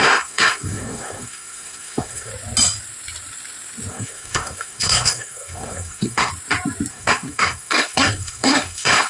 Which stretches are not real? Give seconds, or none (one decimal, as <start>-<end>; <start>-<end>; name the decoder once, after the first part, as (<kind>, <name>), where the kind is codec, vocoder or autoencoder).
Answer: 0.0-2.3 (codec, SNAC); 3.9-6.3; 6.9-9.1